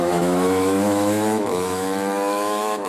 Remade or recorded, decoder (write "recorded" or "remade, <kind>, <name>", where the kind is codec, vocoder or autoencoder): remade, autoencoder, DAC-VAE